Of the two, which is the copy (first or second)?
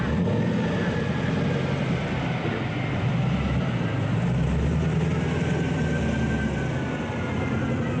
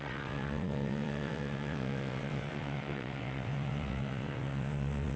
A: second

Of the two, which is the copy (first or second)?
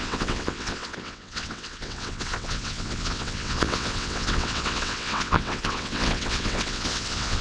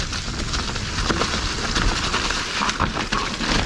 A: first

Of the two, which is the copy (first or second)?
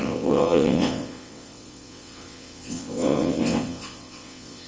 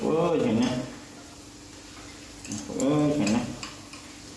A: first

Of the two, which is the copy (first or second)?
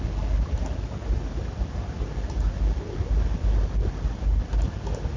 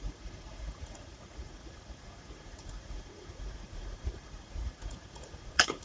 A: second